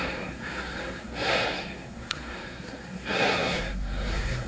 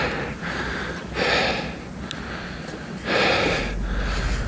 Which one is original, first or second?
second